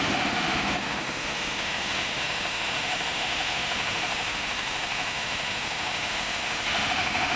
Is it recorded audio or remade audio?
remade